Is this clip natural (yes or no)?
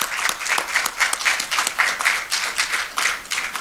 yes